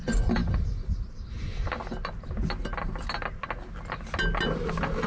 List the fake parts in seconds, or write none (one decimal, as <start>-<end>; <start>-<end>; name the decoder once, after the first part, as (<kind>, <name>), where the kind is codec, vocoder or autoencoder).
none